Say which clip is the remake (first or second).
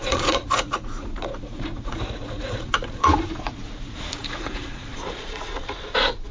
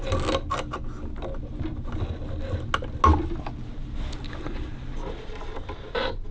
first